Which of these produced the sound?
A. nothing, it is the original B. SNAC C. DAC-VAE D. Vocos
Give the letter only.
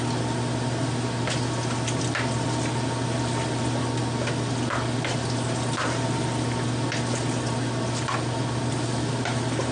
A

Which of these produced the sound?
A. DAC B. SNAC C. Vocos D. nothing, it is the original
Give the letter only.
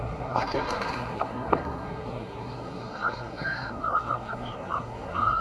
B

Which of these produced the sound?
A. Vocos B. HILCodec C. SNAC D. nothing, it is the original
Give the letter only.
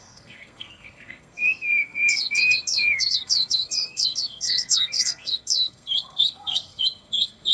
C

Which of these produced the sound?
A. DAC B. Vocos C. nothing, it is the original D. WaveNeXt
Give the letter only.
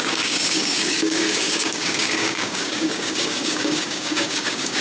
A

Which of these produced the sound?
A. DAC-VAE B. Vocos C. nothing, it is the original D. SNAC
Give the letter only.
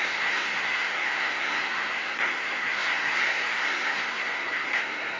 D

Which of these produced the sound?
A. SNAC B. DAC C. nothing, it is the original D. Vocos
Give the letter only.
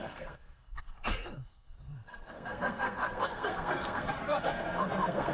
A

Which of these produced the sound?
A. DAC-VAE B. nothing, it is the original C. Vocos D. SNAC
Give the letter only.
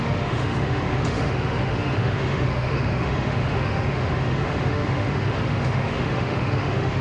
A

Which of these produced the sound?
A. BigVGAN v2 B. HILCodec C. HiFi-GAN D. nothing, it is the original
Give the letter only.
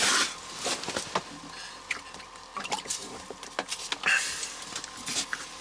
D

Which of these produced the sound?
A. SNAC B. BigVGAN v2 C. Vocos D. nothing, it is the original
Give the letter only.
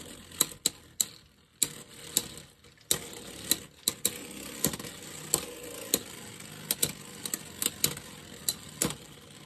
D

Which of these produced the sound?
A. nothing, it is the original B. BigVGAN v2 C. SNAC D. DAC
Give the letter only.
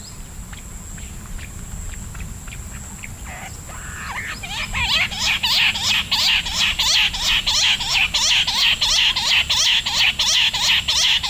A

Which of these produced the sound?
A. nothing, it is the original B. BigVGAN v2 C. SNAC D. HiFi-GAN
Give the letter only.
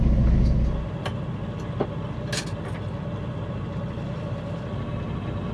A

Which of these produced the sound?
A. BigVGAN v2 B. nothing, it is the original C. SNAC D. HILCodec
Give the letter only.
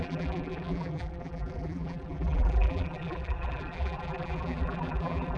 A